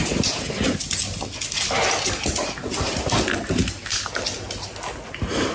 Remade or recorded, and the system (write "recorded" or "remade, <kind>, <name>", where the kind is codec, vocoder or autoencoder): recorded